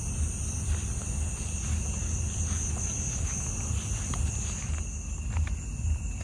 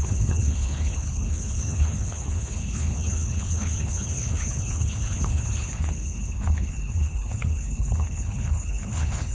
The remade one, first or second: second